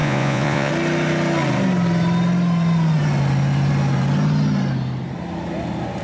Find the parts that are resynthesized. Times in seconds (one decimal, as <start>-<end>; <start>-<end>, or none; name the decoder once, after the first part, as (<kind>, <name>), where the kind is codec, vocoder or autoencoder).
0.0-0.7 (vocoder, Vocos)